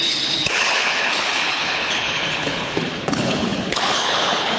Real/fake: fake